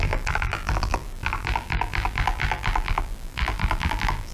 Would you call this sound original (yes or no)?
no